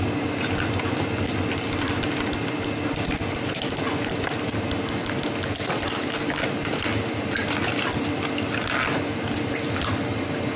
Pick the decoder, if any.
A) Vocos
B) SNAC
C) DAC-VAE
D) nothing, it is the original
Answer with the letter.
D